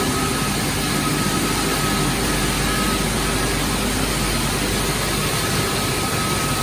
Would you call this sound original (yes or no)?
yes